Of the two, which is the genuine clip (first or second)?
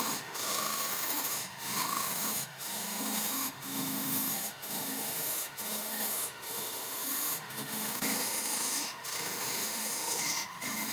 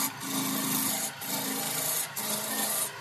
second